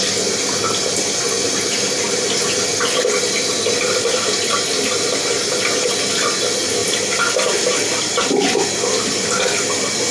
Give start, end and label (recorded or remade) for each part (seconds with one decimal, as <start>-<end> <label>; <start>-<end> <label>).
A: 0.0-10.1 recorded